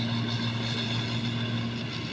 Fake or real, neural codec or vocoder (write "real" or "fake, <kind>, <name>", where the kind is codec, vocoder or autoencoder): real